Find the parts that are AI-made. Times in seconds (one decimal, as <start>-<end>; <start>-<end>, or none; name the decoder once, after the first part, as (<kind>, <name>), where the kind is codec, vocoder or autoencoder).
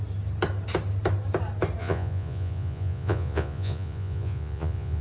1.8-5.0 (vocoder, Vocos)